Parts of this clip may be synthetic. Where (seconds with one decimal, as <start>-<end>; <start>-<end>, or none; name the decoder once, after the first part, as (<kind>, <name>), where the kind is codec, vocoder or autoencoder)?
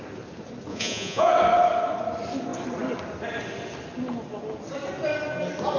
0.7-1.3 (vocoder, Vocos)